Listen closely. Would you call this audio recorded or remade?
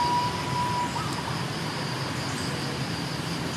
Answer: recorded